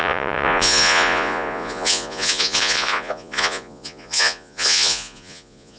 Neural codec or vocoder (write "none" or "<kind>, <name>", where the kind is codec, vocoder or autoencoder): vocoder, Vocos